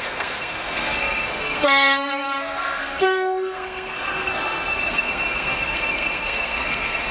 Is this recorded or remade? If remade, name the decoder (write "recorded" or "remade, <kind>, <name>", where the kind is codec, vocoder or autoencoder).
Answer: remade, codec, SNAC